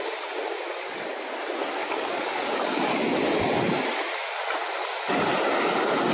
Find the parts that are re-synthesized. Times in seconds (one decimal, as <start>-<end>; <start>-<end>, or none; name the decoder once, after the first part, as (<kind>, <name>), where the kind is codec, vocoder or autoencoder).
1.8-2.6 (codec, DAC)

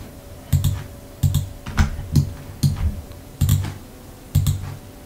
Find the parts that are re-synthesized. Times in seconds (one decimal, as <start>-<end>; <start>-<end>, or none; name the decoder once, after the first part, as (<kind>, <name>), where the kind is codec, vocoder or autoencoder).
0.0-1.2 (vocoder, BigVGAN v2); 2.8-3.5

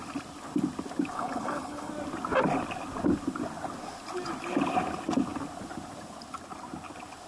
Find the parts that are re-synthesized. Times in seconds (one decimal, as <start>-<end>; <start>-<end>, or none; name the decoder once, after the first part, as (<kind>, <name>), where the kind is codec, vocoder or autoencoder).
1.1-1.9 (codec, HILCodec)

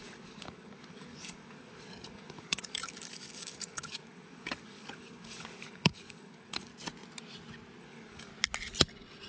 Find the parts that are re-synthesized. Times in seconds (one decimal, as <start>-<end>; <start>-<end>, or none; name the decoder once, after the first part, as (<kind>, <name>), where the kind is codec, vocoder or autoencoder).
0.0-6.7 (codec, DAC); 7.8-8.3

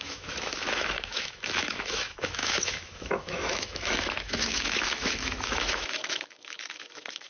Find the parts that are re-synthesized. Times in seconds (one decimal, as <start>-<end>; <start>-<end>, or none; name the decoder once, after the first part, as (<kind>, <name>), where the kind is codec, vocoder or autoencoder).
0.0-7.3 (autoencoder, DAC-VAE)

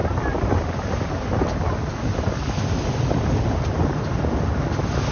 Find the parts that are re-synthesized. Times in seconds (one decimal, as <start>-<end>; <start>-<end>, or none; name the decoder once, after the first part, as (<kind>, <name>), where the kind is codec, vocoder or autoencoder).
none

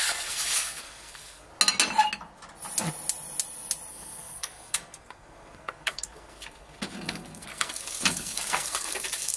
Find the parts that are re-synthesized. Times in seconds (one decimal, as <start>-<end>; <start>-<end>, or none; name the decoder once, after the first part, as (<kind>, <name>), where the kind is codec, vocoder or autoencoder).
0.0-1.5 (codec, SNAC); 3.9-9.4